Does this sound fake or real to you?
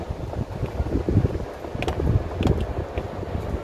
real